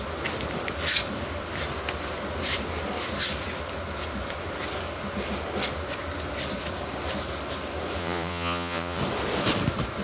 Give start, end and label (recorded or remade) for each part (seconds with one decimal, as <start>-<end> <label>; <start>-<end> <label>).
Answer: 0.0-8.0 recorded; 8.0-9.0 remade; 9.0-10.0 recorded